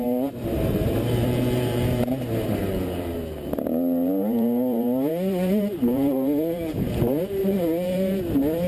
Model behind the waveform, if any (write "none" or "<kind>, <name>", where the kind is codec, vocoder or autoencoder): vocoder, BigVGAN v2